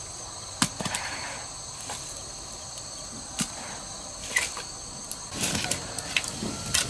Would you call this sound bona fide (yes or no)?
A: yes